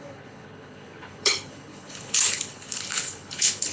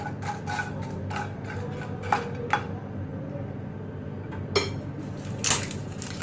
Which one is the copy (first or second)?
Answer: first